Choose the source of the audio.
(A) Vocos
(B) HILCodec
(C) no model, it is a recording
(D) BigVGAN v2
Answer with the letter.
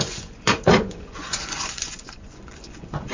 A